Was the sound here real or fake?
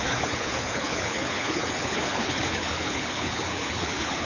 fake